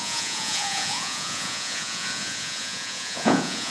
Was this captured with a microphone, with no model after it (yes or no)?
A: no